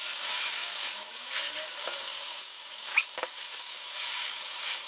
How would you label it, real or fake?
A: fake